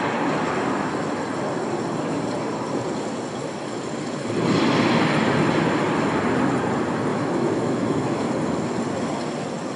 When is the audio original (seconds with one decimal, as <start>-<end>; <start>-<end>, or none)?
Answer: 0.0-7.1; 8.3-9.8